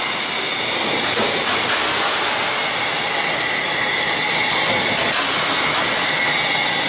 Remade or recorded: recorded